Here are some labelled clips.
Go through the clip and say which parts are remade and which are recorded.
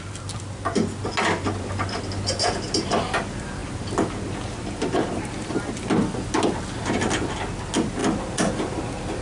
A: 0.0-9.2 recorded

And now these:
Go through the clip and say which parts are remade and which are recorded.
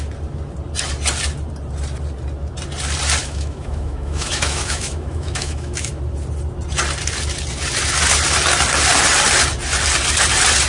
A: 0.0-3.2 recorded; 3.2-5.9 remade; 5.9-10.7 recorded